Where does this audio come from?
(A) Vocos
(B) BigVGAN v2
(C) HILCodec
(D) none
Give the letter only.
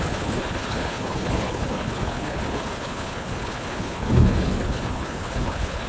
C